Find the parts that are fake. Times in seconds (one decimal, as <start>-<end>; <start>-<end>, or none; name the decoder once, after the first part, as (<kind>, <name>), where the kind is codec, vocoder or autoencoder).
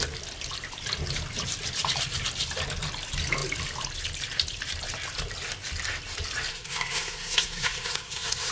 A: 6.5-8.5 (codec, SNAC)